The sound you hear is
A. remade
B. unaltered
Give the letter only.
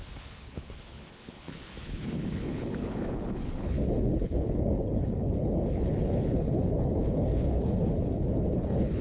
A